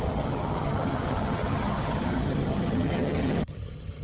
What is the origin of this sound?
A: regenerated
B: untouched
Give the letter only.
A